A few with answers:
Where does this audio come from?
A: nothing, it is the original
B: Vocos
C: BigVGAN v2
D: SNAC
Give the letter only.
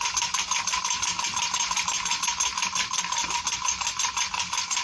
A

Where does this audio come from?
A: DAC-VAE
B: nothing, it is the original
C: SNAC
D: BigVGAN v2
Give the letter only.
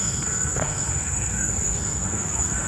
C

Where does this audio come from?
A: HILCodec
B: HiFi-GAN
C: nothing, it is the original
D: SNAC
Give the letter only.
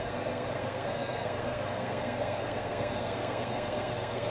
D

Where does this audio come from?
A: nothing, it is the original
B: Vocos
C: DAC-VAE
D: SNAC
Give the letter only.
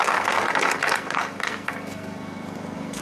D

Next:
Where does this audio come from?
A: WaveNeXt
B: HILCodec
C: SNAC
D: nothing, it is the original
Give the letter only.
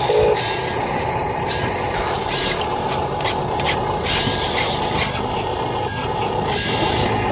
D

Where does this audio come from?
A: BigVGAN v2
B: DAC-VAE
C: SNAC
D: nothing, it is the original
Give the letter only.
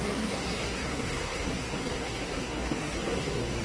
C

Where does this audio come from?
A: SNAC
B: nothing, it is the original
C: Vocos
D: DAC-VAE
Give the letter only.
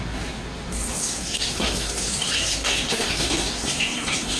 A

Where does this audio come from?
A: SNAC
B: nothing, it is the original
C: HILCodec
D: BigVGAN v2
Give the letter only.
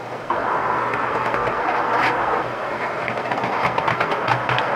A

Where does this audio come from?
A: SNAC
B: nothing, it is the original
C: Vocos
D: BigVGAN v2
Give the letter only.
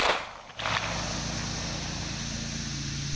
B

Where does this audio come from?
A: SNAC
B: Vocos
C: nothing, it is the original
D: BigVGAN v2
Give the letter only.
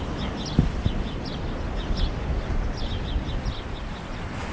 C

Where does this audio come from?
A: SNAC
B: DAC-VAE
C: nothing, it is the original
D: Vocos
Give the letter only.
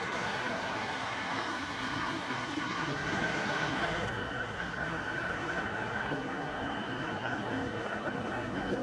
A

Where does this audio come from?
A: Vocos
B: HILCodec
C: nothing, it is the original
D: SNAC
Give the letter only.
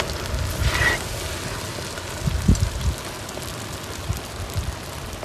C